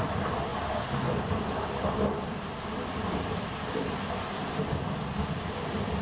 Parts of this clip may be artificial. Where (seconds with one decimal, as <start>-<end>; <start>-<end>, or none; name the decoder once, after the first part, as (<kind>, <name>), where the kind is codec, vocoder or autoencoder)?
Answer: 0.5-4.1 (vocoder, BigVGAN v2)